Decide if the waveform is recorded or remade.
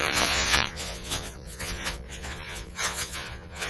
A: remade